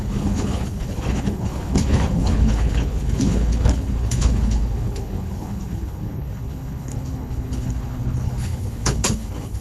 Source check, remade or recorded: remade